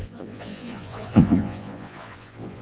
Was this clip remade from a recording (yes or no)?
yes